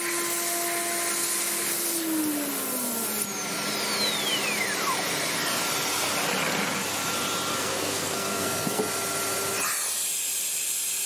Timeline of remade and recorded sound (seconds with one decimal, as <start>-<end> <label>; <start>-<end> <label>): 0.0-7.5 recorded; 7.5-8.8 remade; 8.8-11.1 recorded